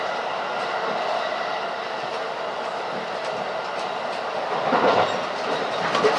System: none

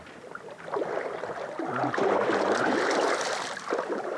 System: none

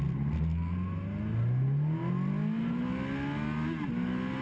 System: none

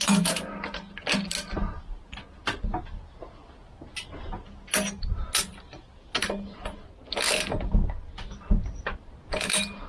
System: none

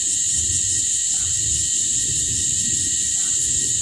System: none